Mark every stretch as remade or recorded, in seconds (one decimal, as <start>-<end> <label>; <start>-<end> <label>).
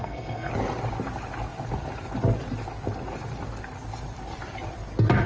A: 0.0-0.5 remade; 0.5-5.3 recorded